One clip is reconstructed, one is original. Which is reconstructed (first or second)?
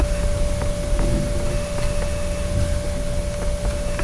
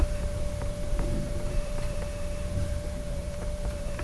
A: second